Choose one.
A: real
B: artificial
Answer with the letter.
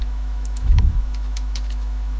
B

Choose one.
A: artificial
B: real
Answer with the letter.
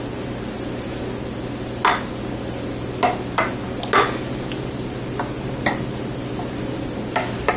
B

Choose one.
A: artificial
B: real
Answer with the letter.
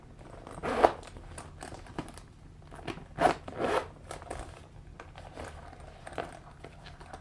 B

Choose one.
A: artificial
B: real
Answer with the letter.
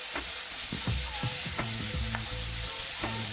B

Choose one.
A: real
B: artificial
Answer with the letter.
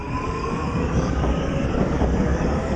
B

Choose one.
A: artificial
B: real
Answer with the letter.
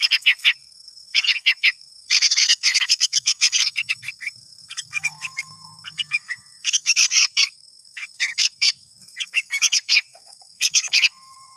A